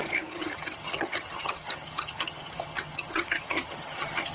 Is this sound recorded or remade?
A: remade